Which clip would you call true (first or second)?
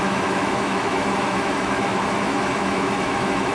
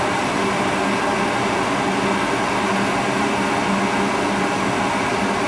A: second